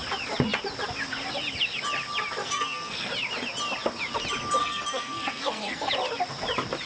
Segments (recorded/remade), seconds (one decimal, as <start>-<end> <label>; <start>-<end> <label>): 0.0-2.4 recorded; 2.4-3.1 remade; 3.1-4.6 recorded; 4.6-5.9 remade; 5.9-6.9 recorded